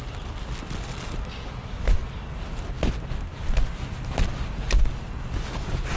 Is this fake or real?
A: real